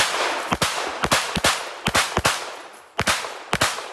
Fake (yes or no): no